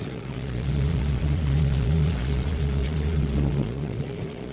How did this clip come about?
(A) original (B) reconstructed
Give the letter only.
B